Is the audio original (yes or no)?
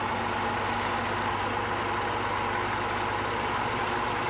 yes